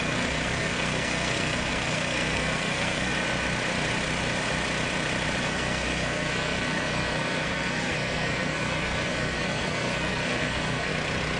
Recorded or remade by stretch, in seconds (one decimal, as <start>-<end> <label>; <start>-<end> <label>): 0.0-3.1 remade; 3.1-5.4 recorded; 5.4-10.9 remade; 10.9-11.4 recorded